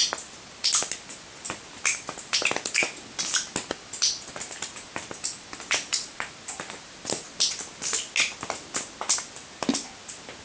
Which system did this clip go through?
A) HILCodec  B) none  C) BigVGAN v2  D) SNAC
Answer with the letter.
B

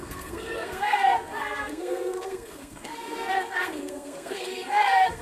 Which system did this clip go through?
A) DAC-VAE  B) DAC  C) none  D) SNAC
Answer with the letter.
D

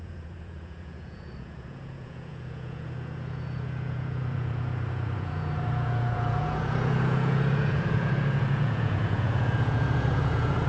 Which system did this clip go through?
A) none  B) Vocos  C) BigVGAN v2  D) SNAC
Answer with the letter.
B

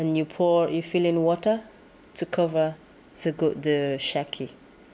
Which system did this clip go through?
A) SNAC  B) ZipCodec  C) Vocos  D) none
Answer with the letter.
D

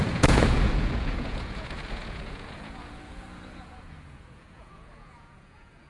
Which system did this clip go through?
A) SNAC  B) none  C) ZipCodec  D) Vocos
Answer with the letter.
D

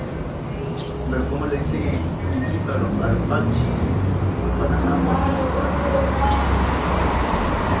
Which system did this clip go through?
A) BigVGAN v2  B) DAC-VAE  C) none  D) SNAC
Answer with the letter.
C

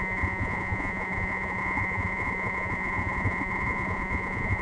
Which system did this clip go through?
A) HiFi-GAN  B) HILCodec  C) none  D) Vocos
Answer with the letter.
D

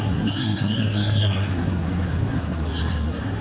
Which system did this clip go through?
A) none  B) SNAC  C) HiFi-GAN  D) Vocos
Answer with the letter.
B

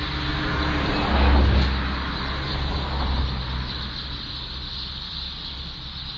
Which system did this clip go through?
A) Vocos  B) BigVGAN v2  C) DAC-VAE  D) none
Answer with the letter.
D